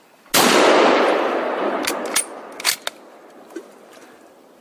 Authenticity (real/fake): real